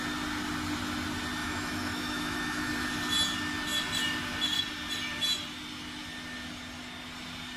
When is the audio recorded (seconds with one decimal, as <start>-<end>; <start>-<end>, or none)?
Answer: 0.0-1.4; 2.7-7.6